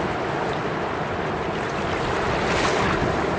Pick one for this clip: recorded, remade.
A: recorded